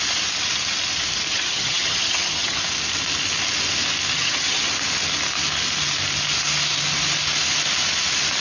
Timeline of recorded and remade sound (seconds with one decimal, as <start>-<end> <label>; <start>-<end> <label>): 0.0-1.3 recorded; 1.3-2.6 remade; 2.6-4.1 recorded; 4.1-4.7 remade; 4.7-8.4 recorded